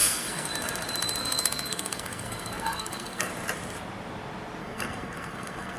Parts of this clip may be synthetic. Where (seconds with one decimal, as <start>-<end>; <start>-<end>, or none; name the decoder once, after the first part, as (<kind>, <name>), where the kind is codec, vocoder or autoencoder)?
0.0-0.5 (codec, SNAC); 1.2-3.3; 4.6-5.8